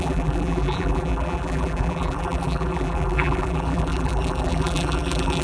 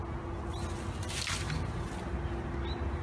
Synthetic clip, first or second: first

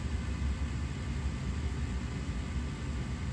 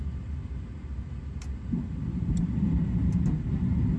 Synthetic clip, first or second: second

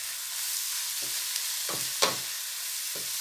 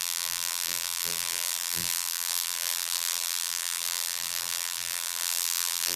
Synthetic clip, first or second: second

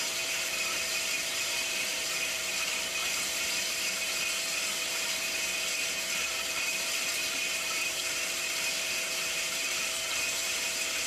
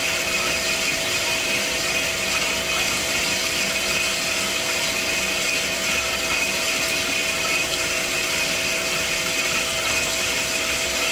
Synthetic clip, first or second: first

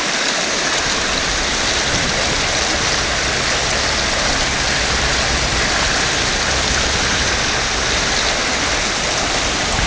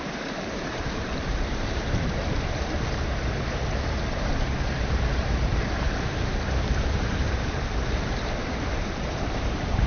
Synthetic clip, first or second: second